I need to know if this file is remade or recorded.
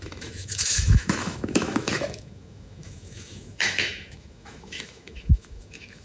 remade